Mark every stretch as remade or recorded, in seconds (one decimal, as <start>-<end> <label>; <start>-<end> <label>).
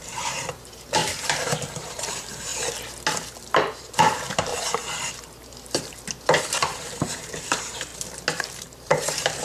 0.0-1.0 remade; 1.0-1.6 recorded; 1.6-2.5 remade; 2.5-3.7 recorded; 3.7-4.5 remade; 4.5-6.4 recorded; 6.4-7.9 remade; 7.9-8.4 recorded; 8.4-9.4 remade